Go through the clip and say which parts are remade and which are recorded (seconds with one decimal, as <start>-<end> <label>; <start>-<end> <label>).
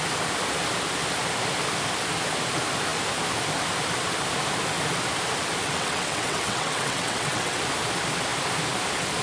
0.0-5.6 recorded; 5.6-7.6 remade; 7.6-9.2 recorded